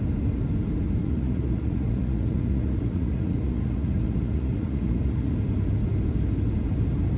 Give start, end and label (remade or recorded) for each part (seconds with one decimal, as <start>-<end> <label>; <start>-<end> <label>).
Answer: 0.0-1.0 recorded; 1.0-5.3 remade; 5.3-7.2 recorded